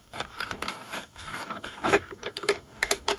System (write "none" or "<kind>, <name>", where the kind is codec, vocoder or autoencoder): codec, DAC